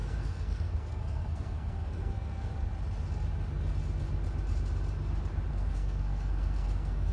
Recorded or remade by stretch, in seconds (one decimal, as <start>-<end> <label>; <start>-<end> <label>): 0.0-2.5 remade; 2.5-5.5 recorded; 5.5-7.1 remade